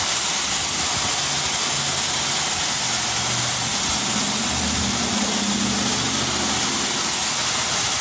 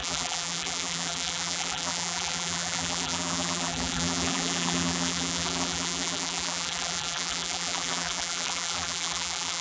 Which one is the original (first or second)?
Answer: first